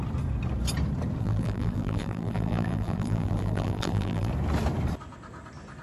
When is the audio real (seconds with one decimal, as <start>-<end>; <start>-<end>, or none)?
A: 0.0-1.2; 4.3-5.8